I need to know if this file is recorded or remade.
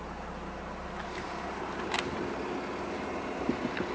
recorded